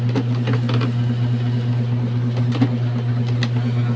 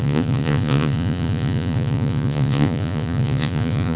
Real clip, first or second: first